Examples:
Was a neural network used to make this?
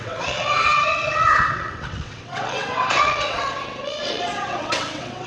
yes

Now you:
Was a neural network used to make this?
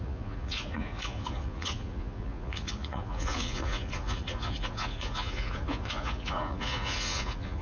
yes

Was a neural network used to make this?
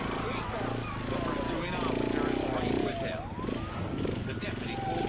no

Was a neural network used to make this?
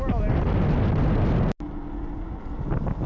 no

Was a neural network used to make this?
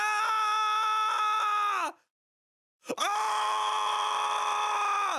no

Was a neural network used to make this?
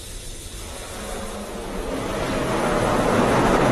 no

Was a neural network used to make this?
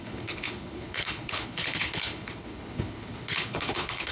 yes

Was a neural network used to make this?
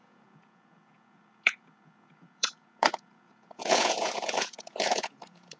yes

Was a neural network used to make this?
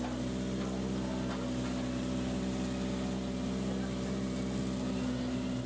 no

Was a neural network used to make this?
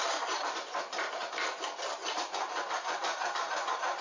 yes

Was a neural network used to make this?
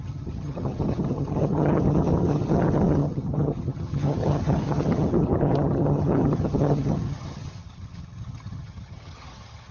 yes